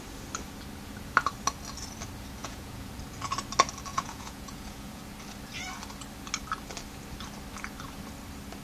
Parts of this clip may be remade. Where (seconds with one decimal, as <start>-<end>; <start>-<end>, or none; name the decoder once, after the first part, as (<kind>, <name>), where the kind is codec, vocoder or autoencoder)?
2.4-2.9 (vocoder, Vocos); 3.9-5.0